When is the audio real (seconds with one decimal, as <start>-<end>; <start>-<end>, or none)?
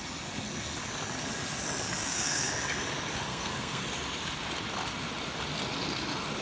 0.0-2.0; 2.5-3.3; 3.8-6.4